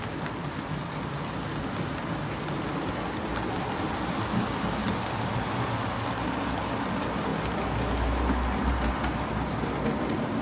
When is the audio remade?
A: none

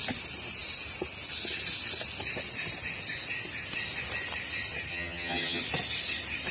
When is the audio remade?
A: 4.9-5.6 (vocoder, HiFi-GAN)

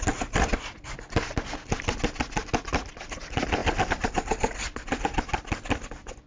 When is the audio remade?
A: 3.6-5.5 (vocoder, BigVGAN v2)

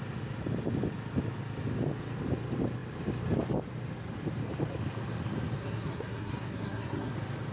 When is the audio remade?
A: 5.6-7.1 (codec, SNAC)